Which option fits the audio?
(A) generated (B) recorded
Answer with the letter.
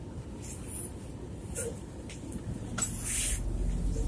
B